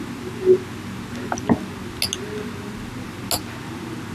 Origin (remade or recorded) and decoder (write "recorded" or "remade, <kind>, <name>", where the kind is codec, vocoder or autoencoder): recorded